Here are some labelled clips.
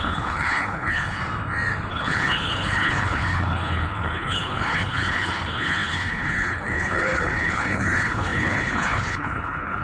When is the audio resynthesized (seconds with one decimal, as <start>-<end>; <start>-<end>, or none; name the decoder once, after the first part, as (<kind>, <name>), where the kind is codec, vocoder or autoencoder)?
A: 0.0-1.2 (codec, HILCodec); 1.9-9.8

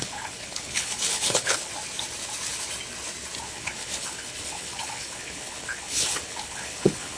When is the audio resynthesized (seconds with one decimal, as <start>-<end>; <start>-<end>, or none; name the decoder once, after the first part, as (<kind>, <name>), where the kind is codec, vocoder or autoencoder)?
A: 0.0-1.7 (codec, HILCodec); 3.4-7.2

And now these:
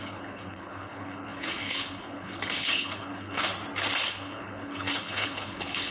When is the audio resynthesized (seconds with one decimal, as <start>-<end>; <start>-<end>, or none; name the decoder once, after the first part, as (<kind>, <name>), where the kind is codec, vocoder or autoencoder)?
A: 0.0-3.5 (codec, HILCodec); 4.1-5.9

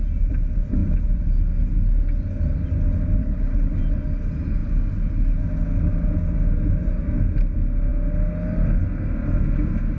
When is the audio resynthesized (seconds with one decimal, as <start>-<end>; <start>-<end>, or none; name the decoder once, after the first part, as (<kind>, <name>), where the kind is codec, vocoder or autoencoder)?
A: 3.2-3.8 (codec, HILCodec)

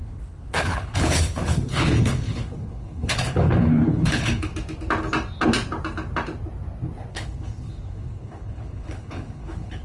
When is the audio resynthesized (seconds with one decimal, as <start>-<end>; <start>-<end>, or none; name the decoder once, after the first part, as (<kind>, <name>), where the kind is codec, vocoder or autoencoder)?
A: 0.0-4.5 (codec, HILCodec); 7.1-9.8

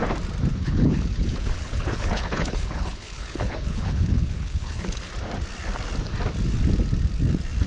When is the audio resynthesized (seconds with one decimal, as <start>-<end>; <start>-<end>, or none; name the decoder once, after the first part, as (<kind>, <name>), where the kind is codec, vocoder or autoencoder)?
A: 0.5-5.1 (codec, HILCodec)

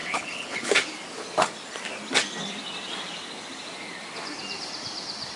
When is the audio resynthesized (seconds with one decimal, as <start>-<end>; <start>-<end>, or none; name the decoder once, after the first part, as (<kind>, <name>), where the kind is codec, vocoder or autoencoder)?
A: 0.0-0.7 (codec, HILCodec)